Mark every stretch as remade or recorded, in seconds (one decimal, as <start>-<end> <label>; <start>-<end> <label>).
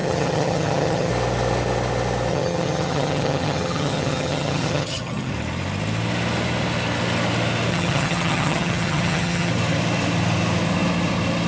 0.0-1.1 remade; 1.1-2.3 recorded; 2.3-5.3 remade; 5.3-7.7 recorded; 7.7-9.5 remade; 9.5-11.5 recorded